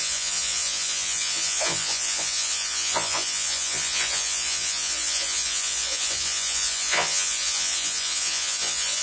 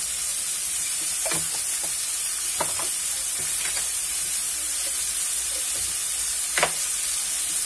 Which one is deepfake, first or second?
first